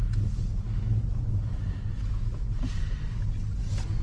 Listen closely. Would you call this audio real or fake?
real